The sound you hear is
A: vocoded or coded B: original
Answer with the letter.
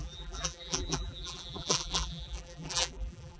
A